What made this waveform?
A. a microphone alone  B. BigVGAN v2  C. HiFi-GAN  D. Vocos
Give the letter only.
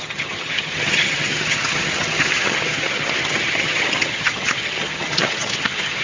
C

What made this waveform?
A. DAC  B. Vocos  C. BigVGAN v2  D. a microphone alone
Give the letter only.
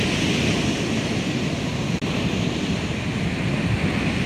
D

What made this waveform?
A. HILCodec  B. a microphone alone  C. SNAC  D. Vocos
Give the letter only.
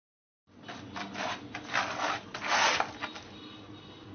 B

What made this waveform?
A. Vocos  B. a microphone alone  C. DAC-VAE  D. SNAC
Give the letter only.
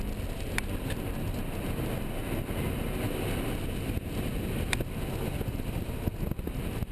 B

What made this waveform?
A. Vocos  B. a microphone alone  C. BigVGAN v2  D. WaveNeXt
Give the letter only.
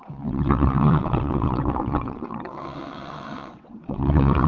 D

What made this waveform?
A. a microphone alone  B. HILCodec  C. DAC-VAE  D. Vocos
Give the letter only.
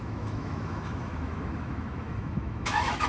C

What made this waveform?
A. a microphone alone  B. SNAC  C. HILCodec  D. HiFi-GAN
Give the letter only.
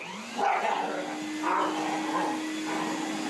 A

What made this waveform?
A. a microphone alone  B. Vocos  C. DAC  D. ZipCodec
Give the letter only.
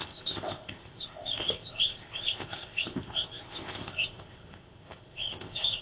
D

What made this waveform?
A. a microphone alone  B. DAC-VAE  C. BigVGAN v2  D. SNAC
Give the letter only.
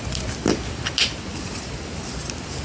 A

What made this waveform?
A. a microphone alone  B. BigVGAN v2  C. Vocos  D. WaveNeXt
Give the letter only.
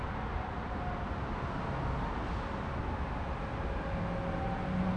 A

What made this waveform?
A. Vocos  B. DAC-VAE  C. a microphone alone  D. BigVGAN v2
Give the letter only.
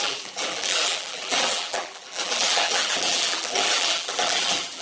D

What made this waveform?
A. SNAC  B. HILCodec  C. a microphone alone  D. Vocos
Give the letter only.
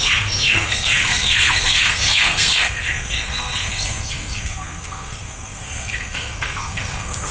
A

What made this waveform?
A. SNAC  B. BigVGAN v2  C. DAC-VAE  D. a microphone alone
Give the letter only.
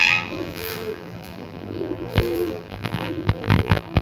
B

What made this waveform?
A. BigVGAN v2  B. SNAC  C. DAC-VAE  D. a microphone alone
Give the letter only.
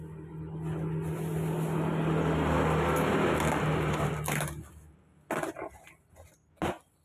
D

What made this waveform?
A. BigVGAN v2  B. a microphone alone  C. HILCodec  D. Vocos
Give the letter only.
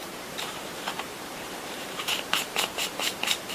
A